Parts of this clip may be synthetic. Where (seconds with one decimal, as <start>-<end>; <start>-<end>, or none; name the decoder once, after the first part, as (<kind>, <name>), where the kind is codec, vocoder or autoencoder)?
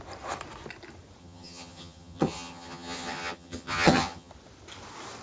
1.2-4.3 (vocoder, HiFi-GAN)